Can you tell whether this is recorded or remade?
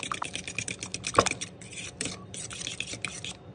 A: recorded